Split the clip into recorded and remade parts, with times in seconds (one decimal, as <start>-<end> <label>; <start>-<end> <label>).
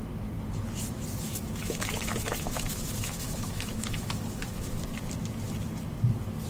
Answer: 0.0-1.3 recorded; 1.3-4.8 remade; 4.8-6.5 recorded